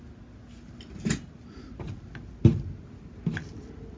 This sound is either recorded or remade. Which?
recorded